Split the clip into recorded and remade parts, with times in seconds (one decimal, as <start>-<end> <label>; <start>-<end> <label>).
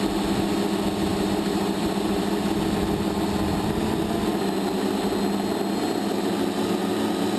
0.0-1.1 recorded; 1.1-2.2 remade; 2.2-7.4 recorded